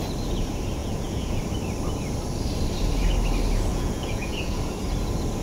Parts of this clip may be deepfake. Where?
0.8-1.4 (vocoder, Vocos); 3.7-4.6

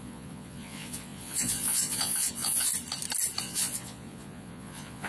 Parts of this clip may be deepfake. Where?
0.0-2.7 (vocoder, Vocos); 3.4-5.1

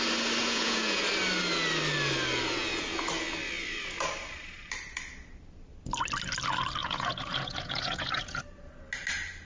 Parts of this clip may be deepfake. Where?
0.4-1.0 (vocoder, Vocos); 6.8-8.4

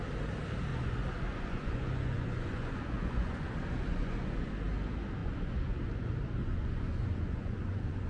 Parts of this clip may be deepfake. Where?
0.7-4.5 (vocoder, Vocos); 5.2-5.8; 6.4-8.1